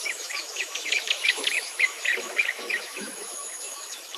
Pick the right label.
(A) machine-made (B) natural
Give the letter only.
A